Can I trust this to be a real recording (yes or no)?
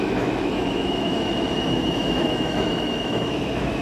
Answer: no